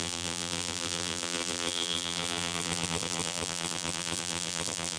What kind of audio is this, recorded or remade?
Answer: remade